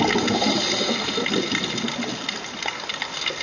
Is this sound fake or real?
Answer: real